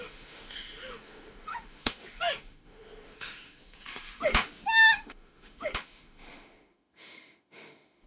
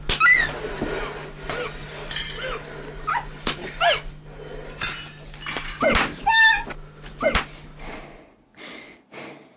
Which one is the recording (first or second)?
second